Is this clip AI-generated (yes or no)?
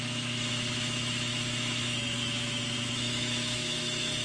yes